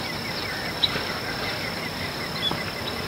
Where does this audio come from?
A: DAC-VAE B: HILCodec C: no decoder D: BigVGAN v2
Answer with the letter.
C